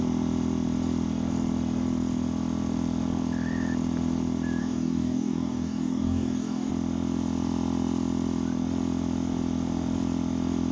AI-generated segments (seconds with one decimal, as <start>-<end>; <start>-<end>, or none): 4.6-6.7